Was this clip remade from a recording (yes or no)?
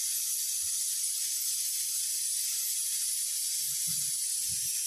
no